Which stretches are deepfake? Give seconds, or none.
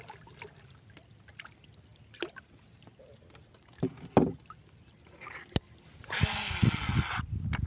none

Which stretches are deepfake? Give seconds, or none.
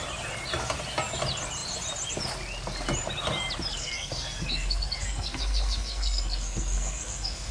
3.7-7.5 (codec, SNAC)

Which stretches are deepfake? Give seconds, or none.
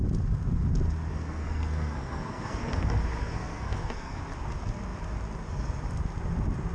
1.1-2.8 (codec, SNAC); 3.2-4.2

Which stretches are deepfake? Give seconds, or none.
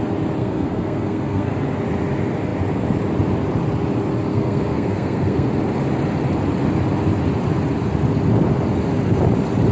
0.4-1.5 (codec, SNAC); 4.3-5.5